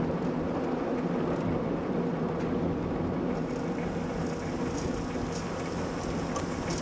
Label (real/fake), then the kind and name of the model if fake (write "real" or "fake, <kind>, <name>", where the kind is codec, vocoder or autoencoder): real